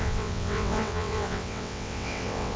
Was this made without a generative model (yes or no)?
no